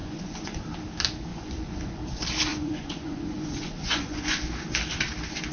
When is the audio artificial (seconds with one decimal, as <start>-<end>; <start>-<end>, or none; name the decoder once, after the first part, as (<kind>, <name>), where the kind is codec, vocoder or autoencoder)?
0.0-0.6 (vocoder, Vocos); 1.3-2.0; 2.5-4.4